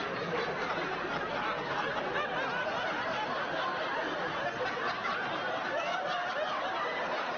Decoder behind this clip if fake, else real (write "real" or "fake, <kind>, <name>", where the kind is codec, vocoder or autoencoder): real